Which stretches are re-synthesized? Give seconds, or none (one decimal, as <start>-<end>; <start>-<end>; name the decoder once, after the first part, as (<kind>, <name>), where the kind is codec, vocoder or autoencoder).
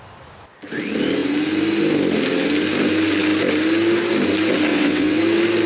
4.7-5.2 (vocoder, WaveNeXt)